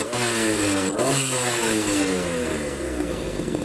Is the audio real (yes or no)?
no